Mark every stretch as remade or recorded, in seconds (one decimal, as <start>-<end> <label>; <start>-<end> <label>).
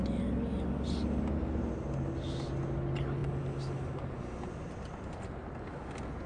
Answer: 0.0-6.3 recorded